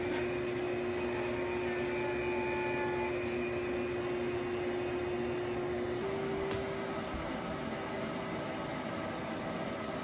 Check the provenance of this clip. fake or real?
real